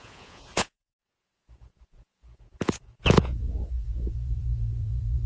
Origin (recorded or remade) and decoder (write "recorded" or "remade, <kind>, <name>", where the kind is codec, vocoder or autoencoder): remade, vocoder, Vocos